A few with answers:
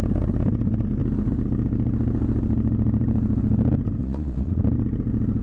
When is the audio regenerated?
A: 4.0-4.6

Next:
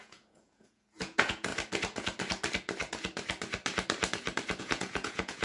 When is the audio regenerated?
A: 0.0-1.5; 4.6-5.4

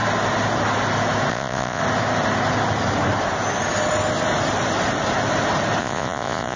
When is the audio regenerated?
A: 1.3-1.8; 5.8-6.6

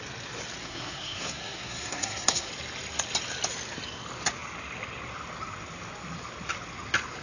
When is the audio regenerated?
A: 0.6-2.5

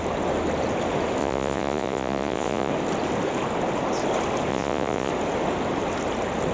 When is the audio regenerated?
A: 1.2-2.7; 4.5-5.1

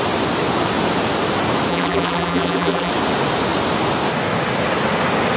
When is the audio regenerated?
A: 1.7-2.9